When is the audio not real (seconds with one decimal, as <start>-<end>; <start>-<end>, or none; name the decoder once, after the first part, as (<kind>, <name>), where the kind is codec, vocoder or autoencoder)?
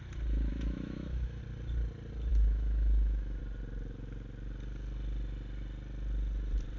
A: 0.5-1.4 (autoencoder, DAC-VAE); 2.3-3.4